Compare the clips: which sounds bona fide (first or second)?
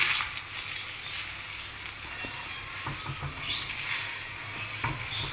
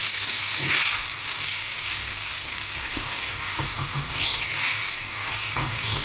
first